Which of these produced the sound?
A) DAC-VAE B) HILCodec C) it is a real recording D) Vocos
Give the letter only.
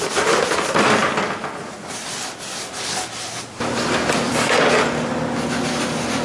C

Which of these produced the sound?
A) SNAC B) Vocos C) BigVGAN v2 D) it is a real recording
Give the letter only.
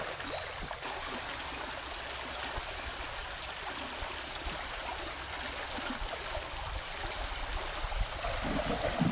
D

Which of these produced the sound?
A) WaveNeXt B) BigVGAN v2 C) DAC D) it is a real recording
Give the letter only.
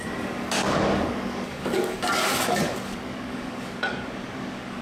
C